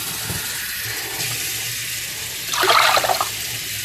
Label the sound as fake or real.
real